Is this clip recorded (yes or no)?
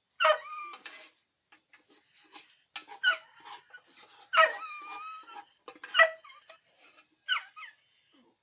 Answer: yes